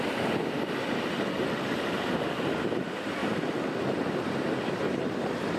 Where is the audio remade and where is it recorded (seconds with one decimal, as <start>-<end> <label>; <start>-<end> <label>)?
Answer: 0.0-3.2 recorded; 3.2-4.9 remade; 4.9-5.6 recorded